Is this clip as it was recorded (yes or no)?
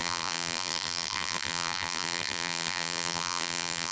no